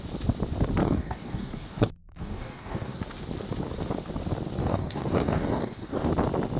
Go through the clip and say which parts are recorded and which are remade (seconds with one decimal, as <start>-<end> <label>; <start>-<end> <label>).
0.0-0.8 recorded; 0.8-3.0 remade; 3.0-4.6 recorded; 4.6-6.1 remade; 6.1-6.6 recorded